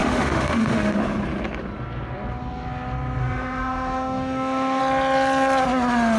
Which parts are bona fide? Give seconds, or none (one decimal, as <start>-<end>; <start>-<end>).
1.0-3.2; 4.8-6.2